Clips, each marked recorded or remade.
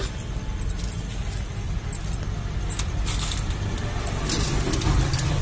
recorded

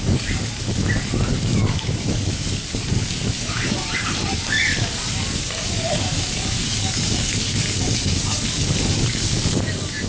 remade